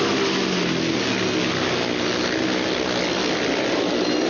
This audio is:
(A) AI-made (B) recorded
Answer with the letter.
B